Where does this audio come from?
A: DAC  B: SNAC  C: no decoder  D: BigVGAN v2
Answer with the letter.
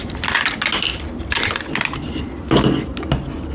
C